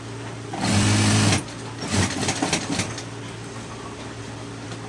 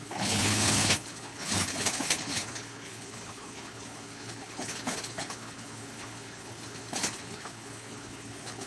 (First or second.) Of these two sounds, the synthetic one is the second